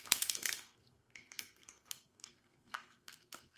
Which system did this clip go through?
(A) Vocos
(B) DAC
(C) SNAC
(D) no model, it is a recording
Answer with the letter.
C